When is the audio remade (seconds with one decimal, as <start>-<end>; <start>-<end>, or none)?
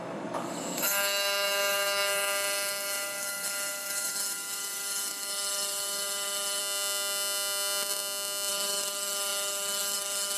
0.0-6.6; 8.5-10.4